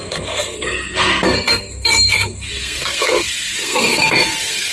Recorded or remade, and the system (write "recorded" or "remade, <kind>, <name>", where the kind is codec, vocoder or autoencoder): remade, codec, SNAC